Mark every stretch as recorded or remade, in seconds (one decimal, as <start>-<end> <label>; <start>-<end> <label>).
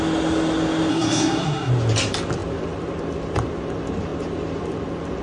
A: 0.0-0.9 recorded; 0.9-1.7 remade; 1.7-5.2 recorded